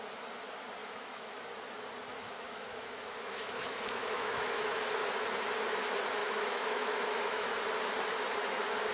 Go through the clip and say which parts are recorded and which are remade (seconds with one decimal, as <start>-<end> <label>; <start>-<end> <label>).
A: 0.0-0.8 recorded; 0.8-1.4 remade; 1.4-2.1 recorded; 2.1-4.8 remade; 4.8-6.2 recorded; 6.2-7.5 remade; 7.5-8.9 recorded